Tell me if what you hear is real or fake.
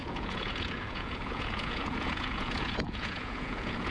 fake